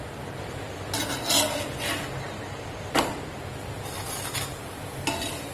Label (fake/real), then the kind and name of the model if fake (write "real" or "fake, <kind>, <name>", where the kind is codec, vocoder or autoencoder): real